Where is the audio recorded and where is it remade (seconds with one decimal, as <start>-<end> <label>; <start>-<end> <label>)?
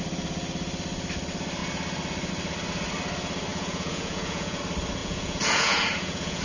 0.0-3.5 recorded; 3.5-4.6 remade; 4.6-5.0 recorded; 5.0-6.4 remade